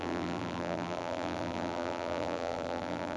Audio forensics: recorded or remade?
remade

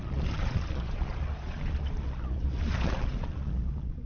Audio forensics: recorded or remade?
remade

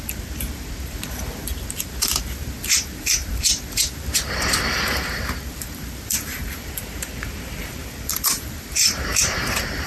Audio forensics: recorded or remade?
remade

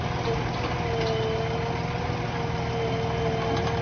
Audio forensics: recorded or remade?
recorded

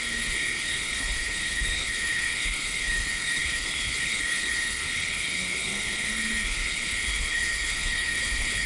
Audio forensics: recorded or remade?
remade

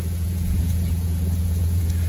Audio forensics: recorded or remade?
remade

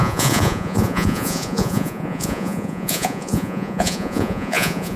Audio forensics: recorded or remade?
remade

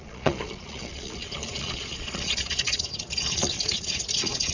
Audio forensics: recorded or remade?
remade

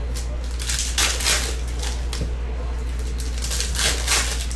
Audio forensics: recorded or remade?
recorded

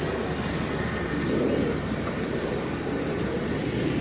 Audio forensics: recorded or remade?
remade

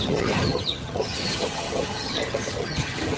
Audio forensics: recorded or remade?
remade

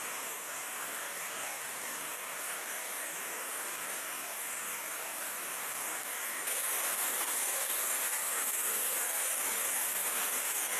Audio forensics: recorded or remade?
remade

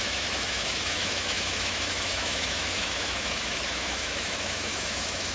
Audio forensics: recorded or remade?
remade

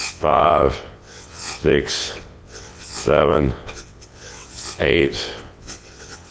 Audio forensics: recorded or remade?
remade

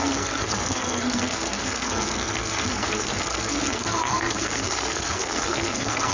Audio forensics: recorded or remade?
remade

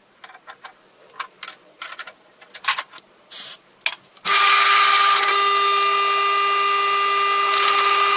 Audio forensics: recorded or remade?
recorded